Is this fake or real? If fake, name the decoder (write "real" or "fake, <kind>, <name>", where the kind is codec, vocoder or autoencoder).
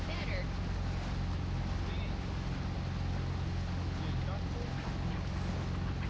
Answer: real